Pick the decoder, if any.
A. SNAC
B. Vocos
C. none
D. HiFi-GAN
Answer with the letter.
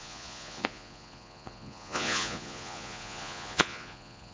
B